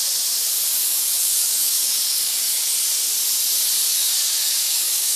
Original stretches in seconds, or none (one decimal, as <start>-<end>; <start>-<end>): 0.0-0.7; 2.7-3.9